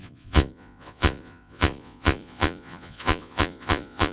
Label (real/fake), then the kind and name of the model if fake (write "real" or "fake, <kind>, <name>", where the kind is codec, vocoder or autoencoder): fake, vocoder, Vocos